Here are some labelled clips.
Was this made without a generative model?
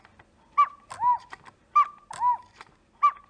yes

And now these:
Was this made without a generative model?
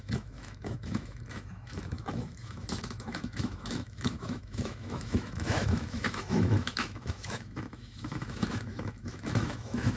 no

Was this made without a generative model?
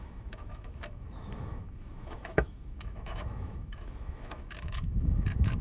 no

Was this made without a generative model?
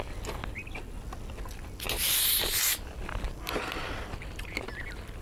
yes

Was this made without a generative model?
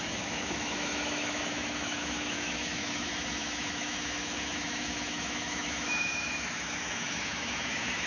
no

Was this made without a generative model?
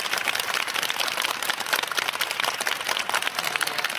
yes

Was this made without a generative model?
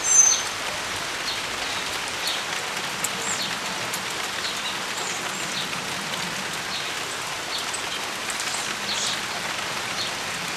yes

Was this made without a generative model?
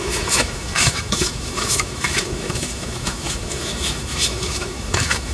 no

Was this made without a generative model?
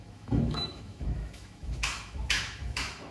no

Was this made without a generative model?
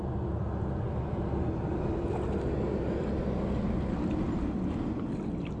yes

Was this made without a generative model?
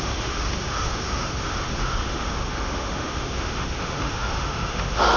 no